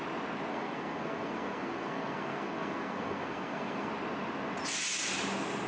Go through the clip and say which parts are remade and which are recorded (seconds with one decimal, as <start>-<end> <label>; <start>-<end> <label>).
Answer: 0.0-0.5 recorded; 0.5-3.9 remade; 3.9-5.7 recorded